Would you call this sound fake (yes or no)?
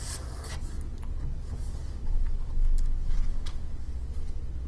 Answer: no